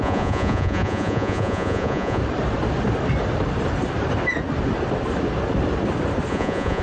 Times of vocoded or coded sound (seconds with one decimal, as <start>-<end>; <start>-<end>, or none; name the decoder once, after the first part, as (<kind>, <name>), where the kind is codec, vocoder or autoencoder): 0.0-2.2 (vocoder, Vocos); 6.3-6.8